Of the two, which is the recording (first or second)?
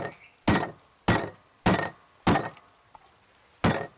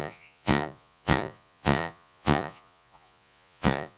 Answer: first